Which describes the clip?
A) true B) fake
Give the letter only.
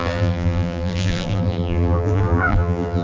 B